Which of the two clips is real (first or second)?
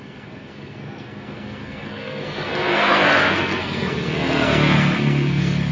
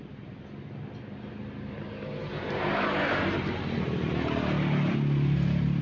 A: second